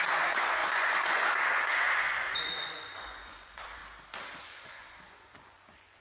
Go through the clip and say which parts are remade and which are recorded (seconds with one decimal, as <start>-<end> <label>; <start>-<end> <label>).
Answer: 0.0-3.8 remade; 3.8-4.4 recorded; 4.4-6.0 remade